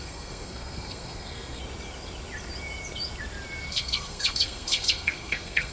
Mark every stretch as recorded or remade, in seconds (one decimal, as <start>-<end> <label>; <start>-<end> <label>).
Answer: 0.0-1.6 remade; 1.6-3.7 recorded; 3.7-5.7 remade